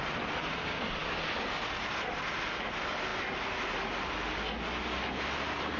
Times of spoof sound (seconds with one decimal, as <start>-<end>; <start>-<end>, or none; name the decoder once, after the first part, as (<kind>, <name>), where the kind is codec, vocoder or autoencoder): none